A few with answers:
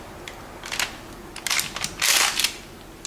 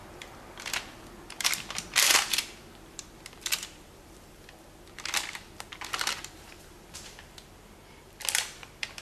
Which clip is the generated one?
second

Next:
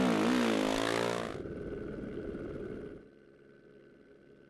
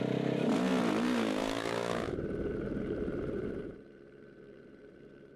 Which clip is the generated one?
second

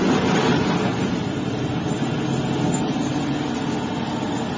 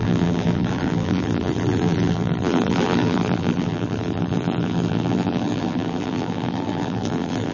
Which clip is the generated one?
second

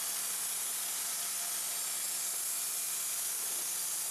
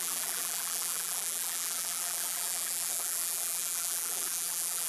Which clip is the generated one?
second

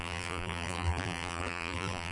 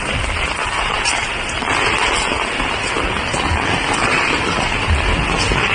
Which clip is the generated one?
first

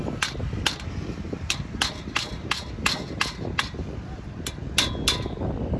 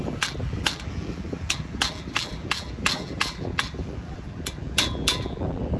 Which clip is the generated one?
second